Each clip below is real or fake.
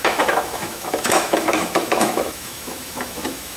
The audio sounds fake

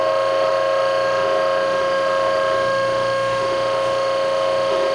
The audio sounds fake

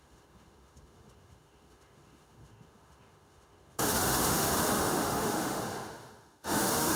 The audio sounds fake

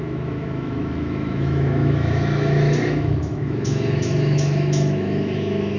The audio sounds fake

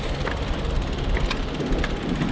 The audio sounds real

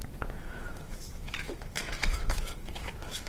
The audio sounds fake